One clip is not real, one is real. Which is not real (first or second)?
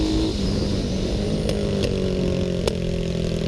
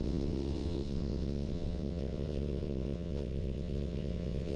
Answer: second